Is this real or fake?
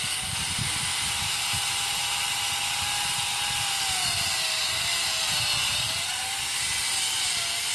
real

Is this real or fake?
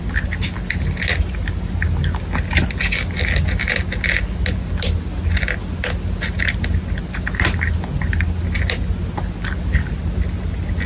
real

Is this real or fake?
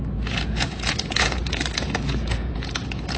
fake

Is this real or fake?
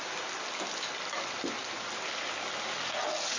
real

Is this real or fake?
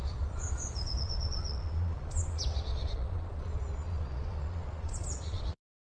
fake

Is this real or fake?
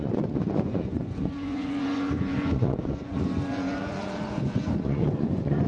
fake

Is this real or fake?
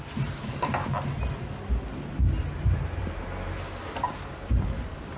real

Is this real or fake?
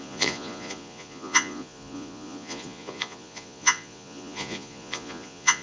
fake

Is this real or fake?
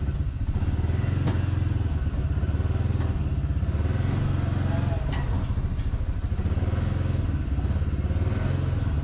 real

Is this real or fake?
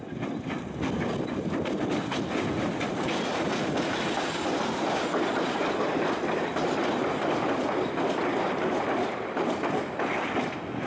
real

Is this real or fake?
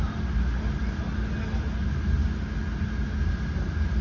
real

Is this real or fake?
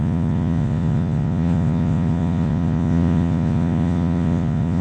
fake